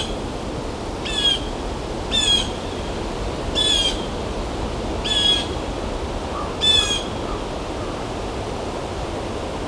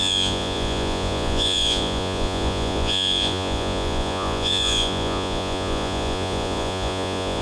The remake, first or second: second